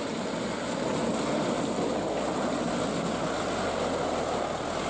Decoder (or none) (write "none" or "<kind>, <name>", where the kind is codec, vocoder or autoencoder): none